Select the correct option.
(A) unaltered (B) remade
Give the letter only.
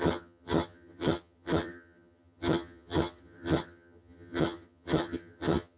B